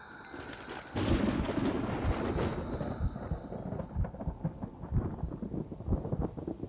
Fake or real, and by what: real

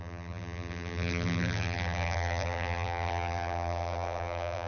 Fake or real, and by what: fake, vocoder, BigVGAN v2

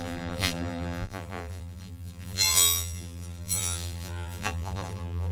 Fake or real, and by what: fake, vocoder, BigVGAN v2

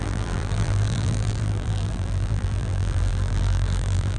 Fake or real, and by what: fake, vocoder, BigVGAN v2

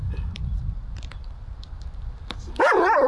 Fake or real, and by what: fake, vocoder, BigVGAN v2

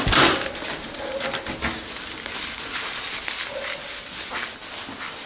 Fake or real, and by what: real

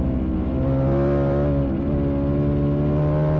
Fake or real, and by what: real